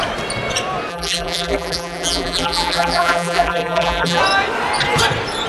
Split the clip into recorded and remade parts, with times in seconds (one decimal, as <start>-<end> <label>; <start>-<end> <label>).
0.0-0.9 recorded; 0.9-4.2 remade; 4.2-5.5 recorded